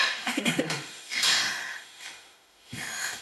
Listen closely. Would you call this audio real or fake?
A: fake